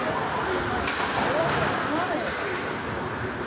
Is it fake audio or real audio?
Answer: real